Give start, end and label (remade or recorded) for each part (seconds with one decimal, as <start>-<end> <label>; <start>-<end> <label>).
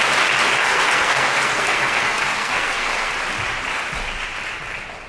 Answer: 0.0-0.6 recorded; 0.6-3.1 remade; 3.1-5.1 recorded